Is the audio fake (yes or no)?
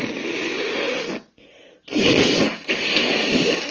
no